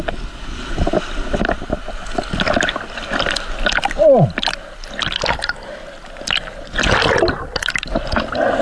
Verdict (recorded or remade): recorded